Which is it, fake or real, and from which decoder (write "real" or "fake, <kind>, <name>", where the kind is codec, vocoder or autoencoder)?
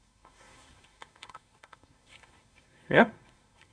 fake, codec, SNAC